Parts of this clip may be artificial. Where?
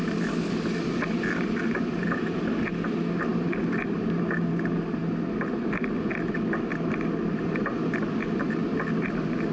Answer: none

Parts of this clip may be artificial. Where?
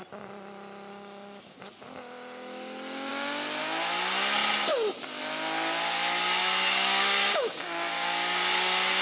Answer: 0.9-1.6 (codec, DAC); 6.4-9.0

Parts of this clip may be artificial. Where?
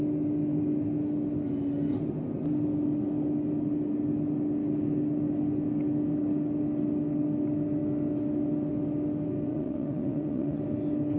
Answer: 9.5-10.6 (vocoder, Vocos)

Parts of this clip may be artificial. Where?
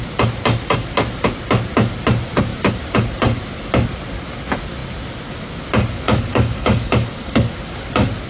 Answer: 6.3-7.5 (codec, DAC)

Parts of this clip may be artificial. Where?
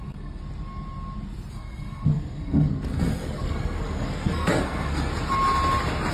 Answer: 0.0-0.4 (codec, SNAC); 1.5-5.1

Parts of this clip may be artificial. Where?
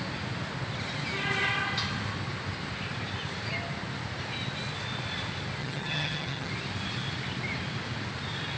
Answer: 5.6-6.5 (vocoder, HiFi-GAN)